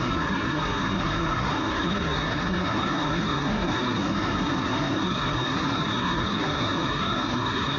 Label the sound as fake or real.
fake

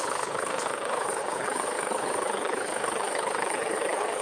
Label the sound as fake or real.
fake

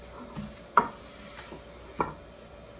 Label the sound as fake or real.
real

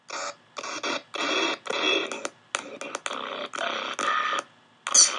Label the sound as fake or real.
real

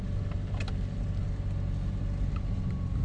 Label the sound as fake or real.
real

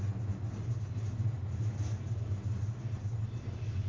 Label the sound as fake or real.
real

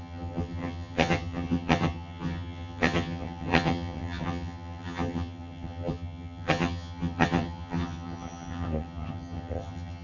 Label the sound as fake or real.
fake